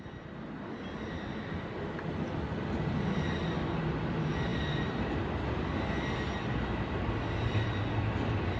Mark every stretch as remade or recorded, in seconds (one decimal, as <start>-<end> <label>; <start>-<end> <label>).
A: 0.0-8.6 recorded